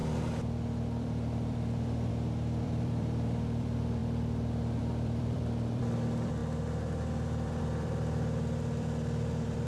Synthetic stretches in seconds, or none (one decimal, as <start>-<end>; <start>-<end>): 0.0-4.0; 4.8-9.7